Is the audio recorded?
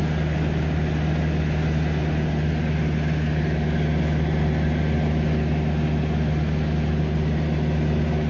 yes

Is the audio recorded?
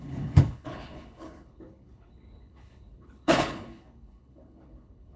no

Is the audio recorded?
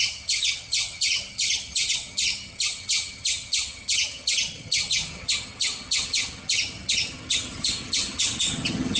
no